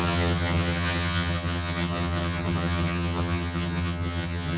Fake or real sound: fake